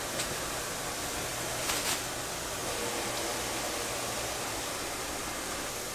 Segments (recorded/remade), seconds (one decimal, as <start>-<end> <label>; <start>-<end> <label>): 0.0-5.9 recorded